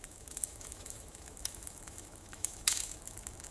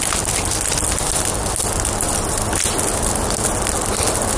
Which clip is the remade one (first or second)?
first